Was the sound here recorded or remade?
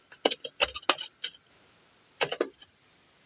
recorded